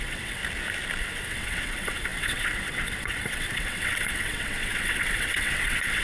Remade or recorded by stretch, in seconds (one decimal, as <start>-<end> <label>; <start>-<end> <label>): 0.0-0.4 remade; 0.4-1.0 recorded; 1.0-6.0 remade